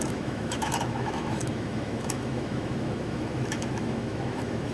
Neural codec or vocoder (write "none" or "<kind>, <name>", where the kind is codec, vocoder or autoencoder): autoencoder, DAC-VAE